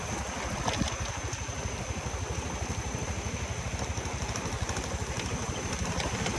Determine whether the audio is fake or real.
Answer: real